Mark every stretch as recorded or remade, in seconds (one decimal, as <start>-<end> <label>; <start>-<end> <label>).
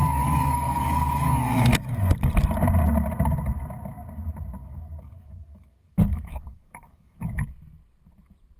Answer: 0.0-2.3 remade; 2.3-4.6 recorded; 4.6-7.5 remade; 7.5-8.6 recorded